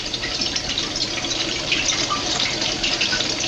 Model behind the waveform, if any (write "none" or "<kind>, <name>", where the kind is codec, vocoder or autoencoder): vocoder, BigVGAN v2